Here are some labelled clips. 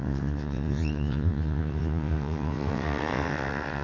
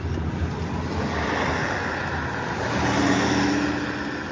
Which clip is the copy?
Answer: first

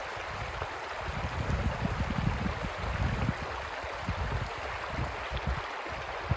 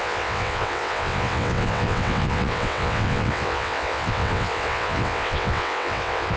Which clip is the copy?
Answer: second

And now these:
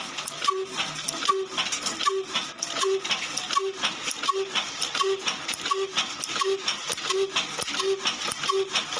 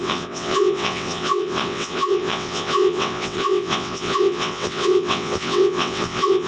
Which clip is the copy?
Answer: second